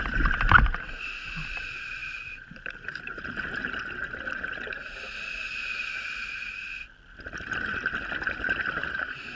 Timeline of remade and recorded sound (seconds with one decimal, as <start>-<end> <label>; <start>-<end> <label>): 0.0-2.0 recorded; 2.0-3.4 remade; 3.4-9.3 recorded